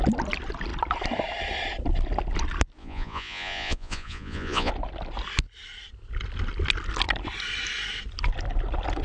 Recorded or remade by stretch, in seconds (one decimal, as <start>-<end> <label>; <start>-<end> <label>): 0.0-2.8 recorded; 2.8-4.7 remade; 4.7-9.0 recorded